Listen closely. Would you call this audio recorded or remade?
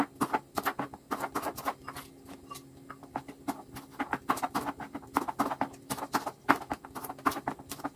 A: recorded